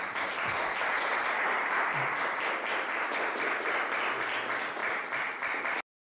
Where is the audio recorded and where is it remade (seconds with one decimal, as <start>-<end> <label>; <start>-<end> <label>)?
0.0-6.0 recorded